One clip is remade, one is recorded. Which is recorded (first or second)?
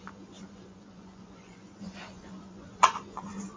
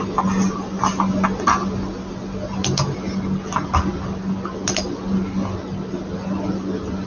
second